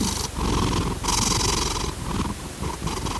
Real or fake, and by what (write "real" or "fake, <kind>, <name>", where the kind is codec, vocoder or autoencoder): real